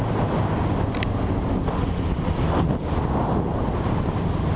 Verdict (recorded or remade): recorded